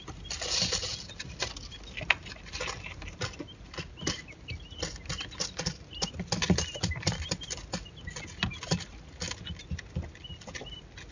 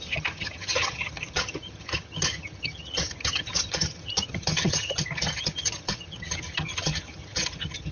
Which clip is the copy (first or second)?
second